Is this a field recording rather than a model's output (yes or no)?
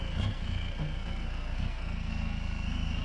no